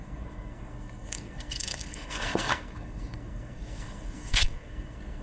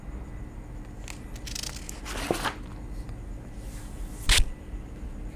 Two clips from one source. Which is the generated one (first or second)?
first